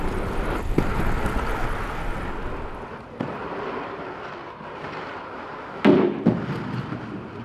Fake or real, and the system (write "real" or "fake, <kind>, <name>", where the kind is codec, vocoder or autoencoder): real